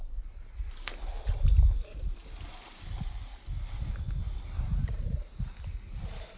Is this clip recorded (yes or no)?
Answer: yes